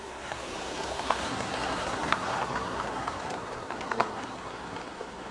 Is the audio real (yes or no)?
no